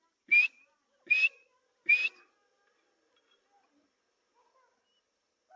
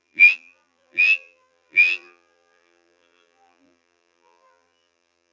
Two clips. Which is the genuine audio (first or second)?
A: first